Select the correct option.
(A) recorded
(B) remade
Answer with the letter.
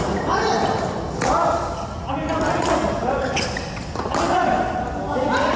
A